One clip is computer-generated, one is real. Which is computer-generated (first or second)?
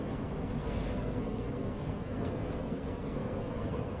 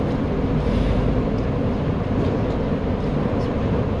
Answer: first